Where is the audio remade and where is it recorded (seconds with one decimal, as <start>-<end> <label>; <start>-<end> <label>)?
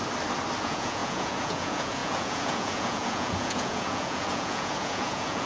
0.0-0.6 recorded; 0.6-5.5 remade